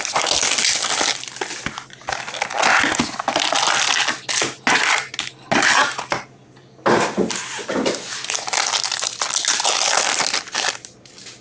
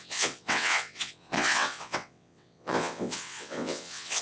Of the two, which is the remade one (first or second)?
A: second